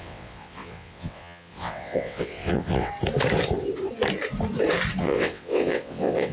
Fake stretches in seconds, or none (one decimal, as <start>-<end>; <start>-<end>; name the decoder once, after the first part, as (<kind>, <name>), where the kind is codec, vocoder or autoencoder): 0.0-2.9 (vocoder, WaveNeXt); 5.0-6.3